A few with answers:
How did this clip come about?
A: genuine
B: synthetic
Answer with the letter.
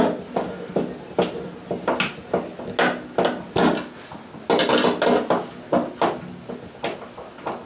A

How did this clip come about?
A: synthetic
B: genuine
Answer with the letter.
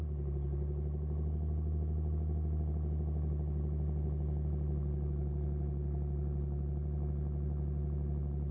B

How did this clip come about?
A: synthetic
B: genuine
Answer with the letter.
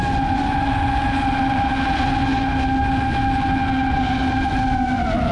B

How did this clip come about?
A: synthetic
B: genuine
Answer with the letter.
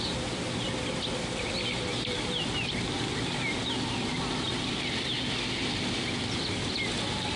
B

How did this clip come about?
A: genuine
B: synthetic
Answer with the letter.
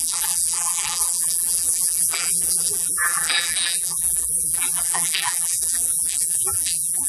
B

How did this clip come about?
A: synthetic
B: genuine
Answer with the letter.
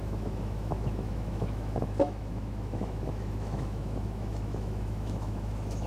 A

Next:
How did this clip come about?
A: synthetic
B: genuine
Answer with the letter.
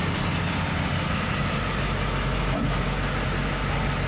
B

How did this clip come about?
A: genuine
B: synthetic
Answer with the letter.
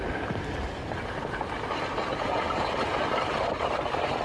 A